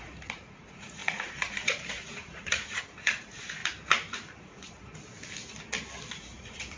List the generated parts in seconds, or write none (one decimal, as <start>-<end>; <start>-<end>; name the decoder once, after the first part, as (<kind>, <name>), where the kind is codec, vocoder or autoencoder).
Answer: 0.0-3.6 (vocoder, Vocos); 4.4-4.9; 6.1-6.8